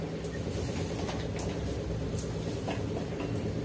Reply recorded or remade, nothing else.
recorded